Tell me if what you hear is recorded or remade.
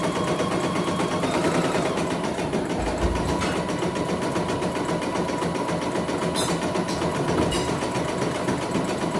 recorded